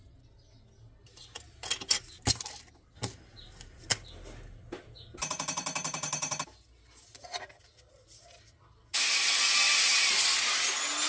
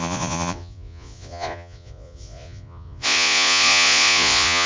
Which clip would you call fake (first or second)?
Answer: second